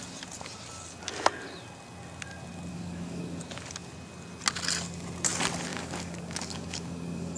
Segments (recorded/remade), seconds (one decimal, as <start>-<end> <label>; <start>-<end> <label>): 0.0-2.7 recorded; 2.7-3.4 remade; 3.4-5.7 recorded; 5.7-7.4 remade